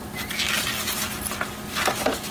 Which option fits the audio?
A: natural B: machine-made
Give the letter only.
A